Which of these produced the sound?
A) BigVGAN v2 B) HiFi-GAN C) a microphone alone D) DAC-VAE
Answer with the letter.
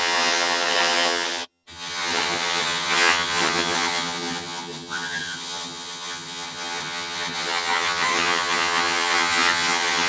B